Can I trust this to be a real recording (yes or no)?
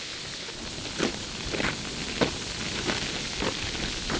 yes